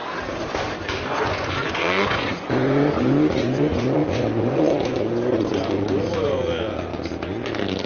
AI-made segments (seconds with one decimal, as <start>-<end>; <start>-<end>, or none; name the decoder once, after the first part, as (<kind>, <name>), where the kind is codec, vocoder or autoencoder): 1.2-6.9 (vocoder, Vocos)